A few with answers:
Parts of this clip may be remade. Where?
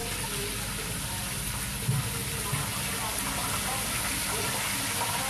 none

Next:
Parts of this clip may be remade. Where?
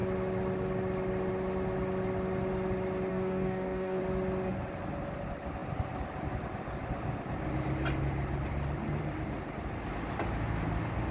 3.1-4.0 (codec, DAC)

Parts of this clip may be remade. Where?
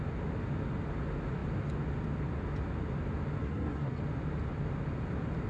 3.4-4.0 (codec, SNAC)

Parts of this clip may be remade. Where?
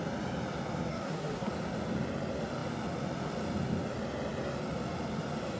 0.9-1.5 (codec, SNAC)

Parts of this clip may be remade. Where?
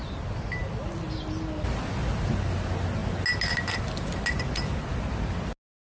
none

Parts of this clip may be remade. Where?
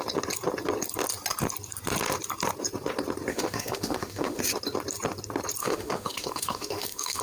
3.3-4.4 (autoencoder, DAC-VAE); 5.6-7.2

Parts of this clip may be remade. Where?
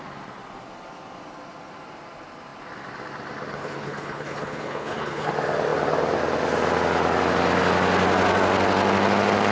3.5-5.3 (codec, HILCodec)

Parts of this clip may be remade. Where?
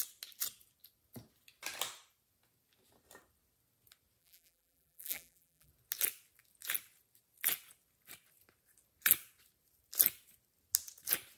4.2-5.7 (vocoder, BigVGAN v2)